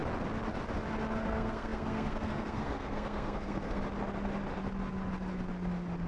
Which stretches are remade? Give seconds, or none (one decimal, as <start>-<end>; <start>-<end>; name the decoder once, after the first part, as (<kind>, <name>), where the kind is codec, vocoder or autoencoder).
1.2-3.8 (codec, SNAC)